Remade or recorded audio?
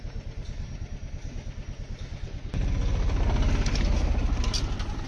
recorded